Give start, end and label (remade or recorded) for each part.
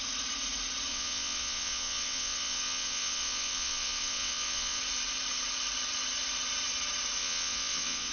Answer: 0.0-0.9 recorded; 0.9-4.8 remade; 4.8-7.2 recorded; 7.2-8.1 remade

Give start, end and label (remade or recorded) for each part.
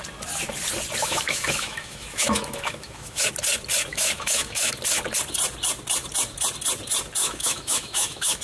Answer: 0.0-1.0 recorded; 1.0-3.3 remade; 3.3-3.9 recorded; 3.9-4.7 remade; 4.7-7.2 recorded; 7.2-8.4 remade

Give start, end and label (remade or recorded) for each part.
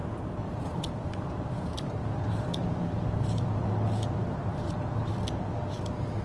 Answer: 0.0-3.7 remade; 3.7-6.2 recorded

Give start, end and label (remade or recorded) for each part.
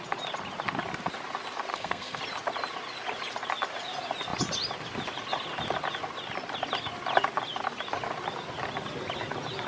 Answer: 0.0-1.7 recorded; 1.7-2.2 remade; 2.2-9.7 recorded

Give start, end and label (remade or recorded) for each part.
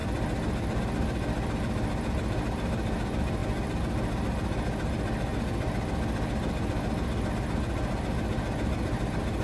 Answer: 0.0-9.4 recorded